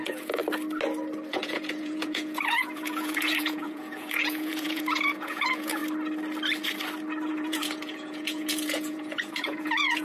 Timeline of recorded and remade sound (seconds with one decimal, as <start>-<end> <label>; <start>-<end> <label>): 0.0-0.4 remade; 0.4-1.3 recorded; 1.3-5.8 remade; 5.8-7.3 recorded; 7.3-10.0 remade